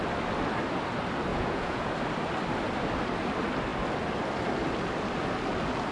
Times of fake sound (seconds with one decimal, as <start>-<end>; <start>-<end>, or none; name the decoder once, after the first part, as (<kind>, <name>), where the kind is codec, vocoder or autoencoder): 1.3-1.9 (vocoder, Vocos)